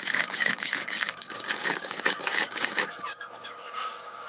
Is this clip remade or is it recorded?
remade